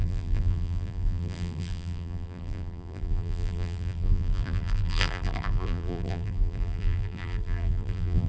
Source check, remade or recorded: remade